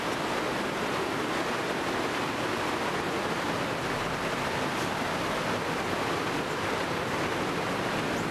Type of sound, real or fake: real